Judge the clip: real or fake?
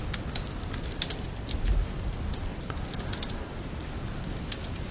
real